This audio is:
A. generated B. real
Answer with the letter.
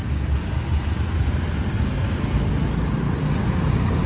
B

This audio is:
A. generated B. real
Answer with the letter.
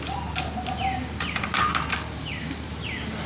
B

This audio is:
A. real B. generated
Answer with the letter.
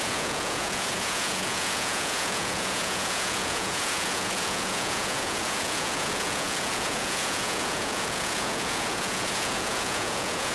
B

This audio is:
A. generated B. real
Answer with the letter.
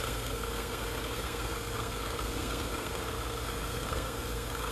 A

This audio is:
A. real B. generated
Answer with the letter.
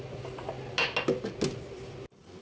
A